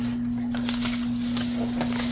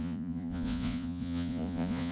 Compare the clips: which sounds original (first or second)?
first